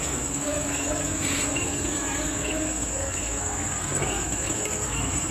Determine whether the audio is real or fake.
fake